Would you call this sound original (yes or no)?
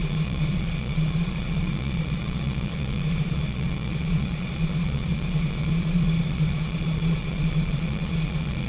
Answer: no